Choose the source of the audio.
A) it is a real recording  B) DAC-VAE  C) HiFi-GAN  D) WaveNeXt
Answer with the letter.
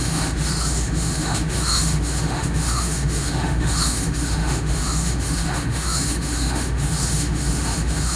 B